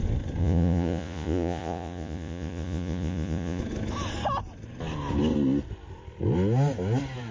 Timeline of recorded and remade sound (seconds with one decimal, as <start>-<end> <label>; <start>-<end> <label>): 0.0-0.4 recorded; 0.4-3.6 remade; 3.6-7.3 recorded

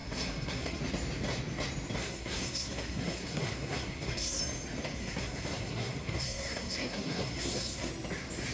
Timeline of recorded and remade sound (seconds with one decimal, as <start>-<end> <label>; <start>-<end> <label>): 0.0-0.8 remade; 0.8-2.0 recorded; 2.0-4.4 remade; 4.4-5.0 recorded; 5.0-7.9 remade; 7.9-8.5 recorded

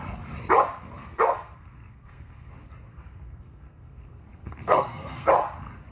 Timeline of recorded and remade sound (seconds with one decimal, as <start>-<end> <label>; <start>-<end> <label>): 0.0-1.0 recorded; 1.0-2.5 remade; 2.5-2.9 recorded; 2.9-5.3 remade; 5.3-5.9 recorded

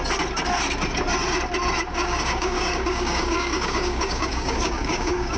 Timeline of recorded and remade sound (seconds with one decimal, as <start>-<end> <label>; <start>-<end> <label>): 0.0-1.9 recorded; 1.9-5.4 remade

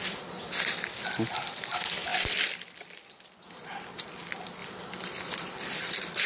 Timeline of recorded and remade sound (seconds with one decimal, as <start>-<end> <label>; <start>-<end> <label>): 0.0-2.1 recorded; 2.1-3.9 remade; 3.9-4.6 recorded; 4.6-6.3 remade

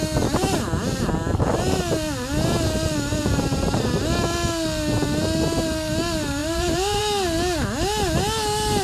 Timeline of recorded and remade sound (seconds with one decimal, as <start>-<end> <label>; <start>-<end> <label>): 0.0-3.1 recorded; 3.1-3.8 remade; 3.8-6.4 recorded; 6.4-7.0 remade; 7.0-8.8 recorded